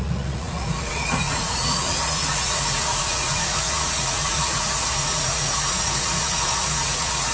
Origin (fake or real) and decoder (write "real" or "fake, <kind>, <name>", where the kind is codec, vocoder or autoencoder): fake, vocoder, Vocos